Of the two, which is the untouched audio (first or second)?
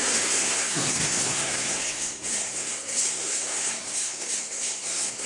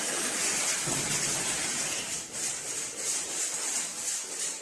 second